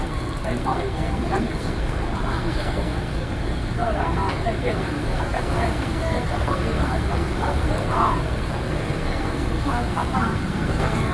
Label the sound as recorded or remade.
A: remade